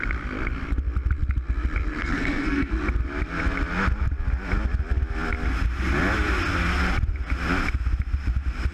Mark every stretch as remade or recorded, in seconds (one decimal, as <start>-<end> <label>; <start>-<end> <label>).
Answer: 0.0-2.0 recorded; 2.0-2.7 remade; 2.7-8.7 recorded